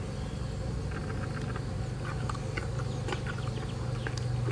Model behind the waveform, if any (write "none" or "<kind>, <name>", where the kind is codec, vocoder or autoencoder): none